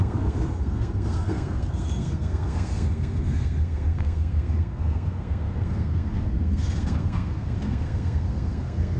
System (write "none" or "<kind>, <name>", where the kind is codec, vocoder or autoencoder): codec, SNAC